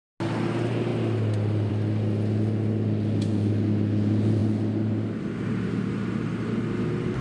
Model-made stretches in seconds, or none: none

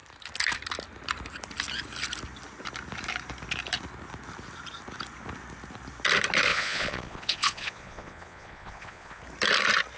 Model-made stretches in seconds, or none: 6.5-9.2

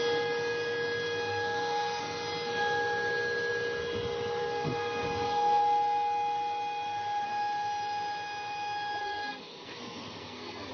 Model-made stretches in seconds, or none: 1.3-2.0; 4.4-5.6; 9.0-10.7

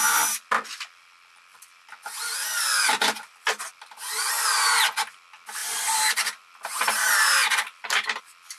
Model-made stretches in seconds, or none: 1.5-4.3; 5.6-8.2

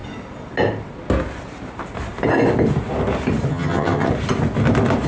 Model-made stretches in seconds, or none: 3.5-4.1

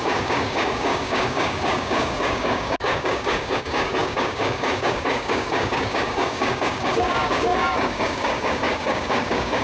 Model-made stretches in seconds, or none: 0.0-9.6

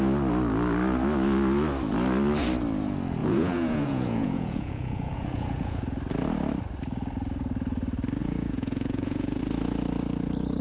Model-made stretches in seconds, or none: 3.2-5.8; 8.2-9.4